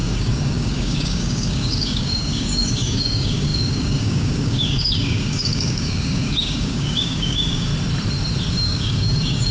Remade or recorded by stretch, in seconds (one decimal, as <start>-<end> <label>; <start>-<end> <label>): 0.0-7.7 remade; 7.7-8.5 recorded; 8.5-9.5 remade